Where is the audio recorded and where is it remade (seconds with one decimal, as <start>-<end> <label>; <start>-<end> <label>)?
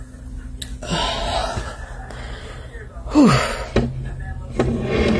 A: 0.0-5.2 recorded